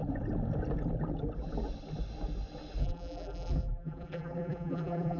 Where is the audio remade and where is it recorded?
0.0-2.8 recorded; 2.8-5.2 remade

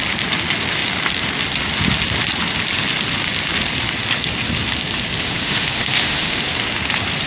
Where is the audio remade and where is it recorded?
0.0-5.2 recorded; 5.2-6.4 remade; 6.4-7.3 recorded

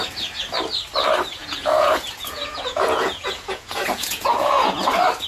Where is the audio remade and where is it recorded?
0.0-1.4 recorded; 1.4-4.6 remade; 4.6-5.3 recorded

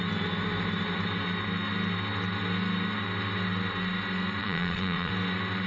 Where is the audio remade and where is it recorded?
0.0-4.4 recorded; 4.4-5.1 remade; 5.1-5.7 recorded

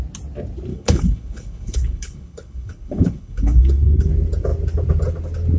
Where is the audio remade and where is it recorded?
0.0-0.7 recorded; 0.7-4.1 remade; 4.1-5.6 recorded